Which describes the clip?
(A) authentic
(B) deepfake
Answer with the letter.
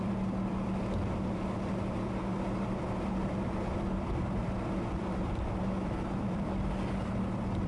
B